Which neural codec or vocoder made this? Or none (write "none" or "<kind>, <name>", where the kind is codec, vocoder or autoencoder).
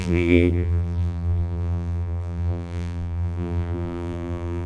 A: vocoder, BigVGAN v2